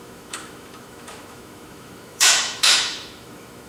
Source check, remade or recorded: remade